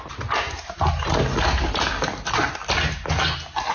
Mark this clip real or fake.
real